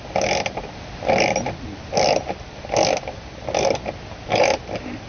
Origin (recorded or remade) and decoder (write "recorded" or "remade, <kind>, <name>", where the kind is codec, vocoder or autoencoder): recorded